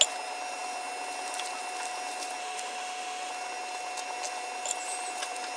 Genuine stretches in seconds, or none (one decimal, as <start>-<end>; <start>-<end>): 0.0-2.4; 3.3-5.6